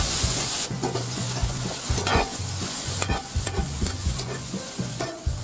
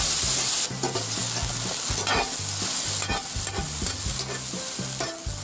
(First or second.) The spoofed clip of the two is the first